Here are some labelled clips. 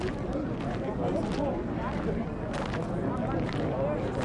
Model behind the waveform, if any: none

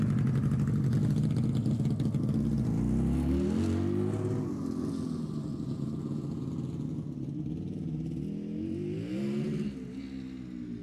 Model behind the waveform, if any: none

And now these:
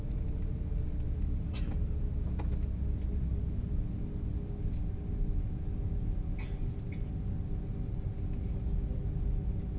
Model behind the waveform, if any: none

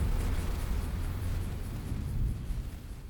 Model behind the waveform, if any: vocoder, BigVGAN v2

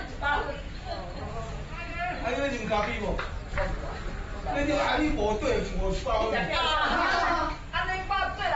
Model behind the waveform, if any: none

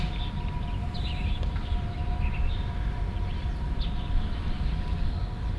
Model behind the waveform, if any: none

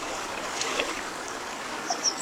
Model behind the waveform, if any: codec, DAC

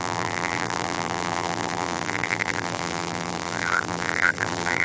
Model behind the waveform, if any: vocoder, BigVGAN v2